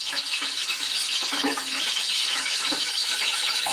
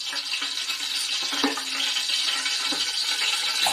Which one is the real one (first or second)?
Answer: second